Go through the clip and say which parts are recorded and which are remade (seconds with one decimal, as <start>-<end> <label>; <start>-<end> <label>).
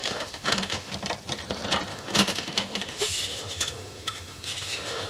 0.0-0.9 remade; 0.9-1.9 recorded; 1.9-5.1 remade